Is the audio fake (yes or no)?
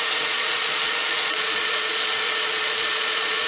yes